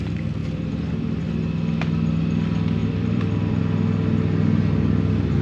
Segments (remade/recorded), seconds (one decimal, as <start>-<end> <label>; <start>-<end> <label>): 0.0-0.4 recorded; 0.4-1.3 remade; 1.3-2.8 recorded; 2.8-3.6 remade; 3.6-5.4 recorded